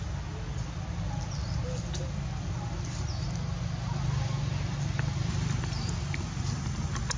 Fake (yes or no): no